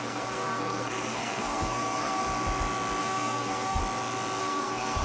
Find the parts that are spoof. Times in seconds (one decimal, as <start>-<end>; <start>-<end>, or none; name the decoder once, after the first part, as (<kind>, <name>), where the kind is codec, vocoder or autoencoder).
0.0-2.2 (codec, SNAC); 3.0-3.8; 4.4-5.0

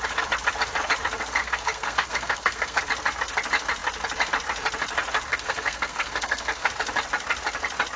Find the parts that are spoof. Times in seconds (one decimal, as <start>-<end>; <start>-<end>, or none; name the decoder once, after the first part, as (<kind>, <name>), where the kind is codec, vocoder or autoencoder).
1.4-2.8 (codec, SNAC); 5.3-6.7

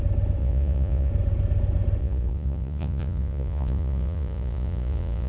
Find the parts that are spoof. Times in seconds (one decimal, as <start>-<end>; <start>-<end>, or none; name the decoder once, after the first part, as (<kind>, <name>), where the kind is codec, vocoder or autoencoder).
0.4-1.1 (vocoder, Vocos); 2.0-5.3

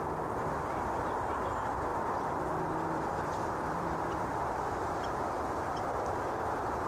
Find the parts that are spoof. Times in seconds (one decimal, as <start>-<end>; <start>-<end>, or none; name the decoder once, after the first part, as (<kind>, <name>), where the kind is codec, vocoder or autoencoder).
0.0-6.9 (vocoder, BigVGAN v2)